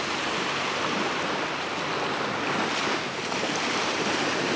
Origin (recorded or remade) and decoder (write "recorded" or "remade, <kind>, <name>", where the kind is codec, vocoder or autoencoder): recorded